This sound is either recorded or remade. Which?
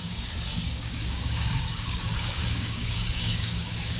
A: remade